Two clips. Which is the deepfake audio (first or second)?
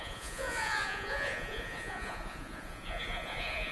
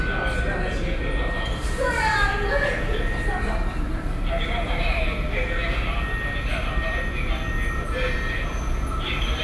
first